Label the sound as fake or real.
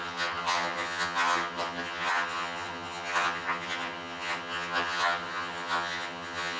fake